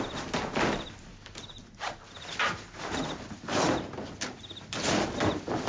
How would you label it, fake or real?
real